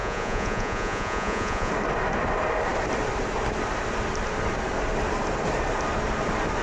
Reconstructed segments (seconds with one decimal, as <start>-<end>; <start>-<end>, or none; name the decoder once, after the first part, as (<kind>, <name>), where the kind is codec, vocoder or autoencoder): 0.0-1.7 (vocoder, Vocos)